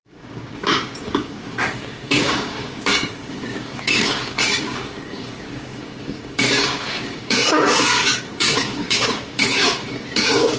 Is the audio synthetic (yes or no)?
yes